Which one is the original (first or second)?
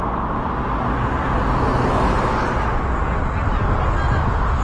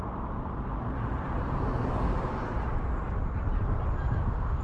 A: first